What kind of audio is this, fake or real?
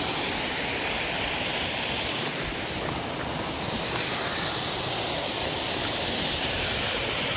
real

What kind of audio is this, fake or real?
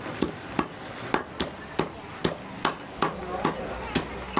real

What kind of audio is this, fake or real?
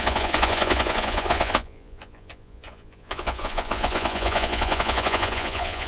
fake